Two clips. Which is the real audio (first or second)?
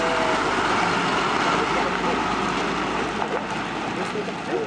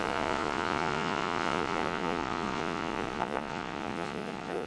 first